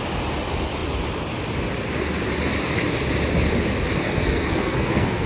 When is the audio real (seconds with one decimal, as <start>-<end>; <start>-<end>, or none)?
0.0-4.0